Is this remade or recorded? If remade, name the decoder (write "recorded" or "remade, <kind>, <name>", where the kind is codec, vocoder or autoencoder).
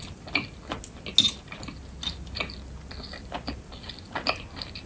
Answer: recorded